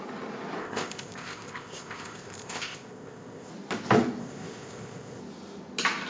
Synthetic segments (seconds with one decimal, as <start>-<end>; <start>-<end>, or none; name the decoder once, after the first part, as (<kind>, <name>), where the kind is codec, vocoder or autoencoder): 0.6-3.5 (codec, ZipCodec); 4.2-5.2